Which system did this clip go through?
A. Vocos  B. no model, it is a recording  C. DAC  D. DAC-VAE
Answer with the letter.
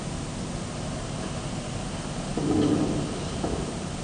B